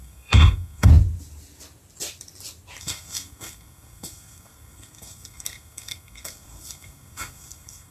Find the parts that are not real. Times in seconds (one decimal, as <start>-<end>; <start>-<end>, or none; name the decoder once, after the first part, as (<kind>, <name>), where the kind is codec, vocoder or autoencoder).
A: 0.0-0.9 (codec, SNAC); 2.8-7.9